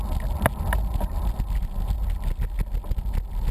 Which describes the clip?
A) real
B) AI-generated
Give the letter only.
A